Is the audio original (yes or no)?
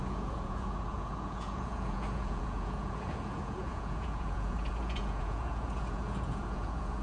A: no